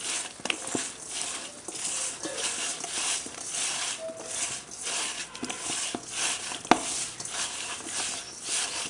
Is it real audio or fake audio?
real